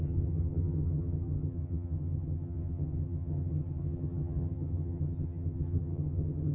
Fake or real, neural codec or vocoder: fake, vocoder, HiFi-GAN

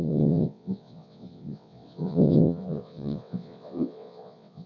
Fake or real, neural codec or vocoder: fake, vocoder, WaveNeXt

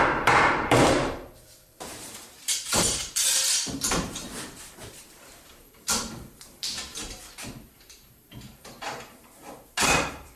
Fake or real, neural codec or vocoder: fake, vocoder, BigVGAN v2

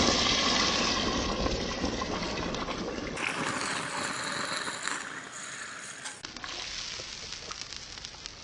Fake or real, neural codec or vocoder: real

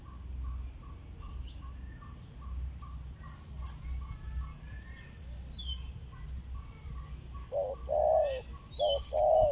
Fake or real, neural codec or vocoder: real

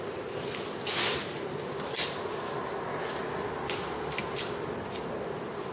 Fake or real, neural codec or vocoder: real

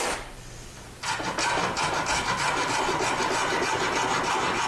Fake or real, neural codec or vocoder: real